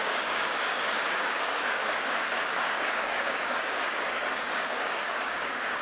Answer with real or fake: fake